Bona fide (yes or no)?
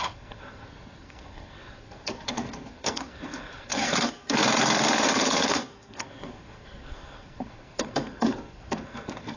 no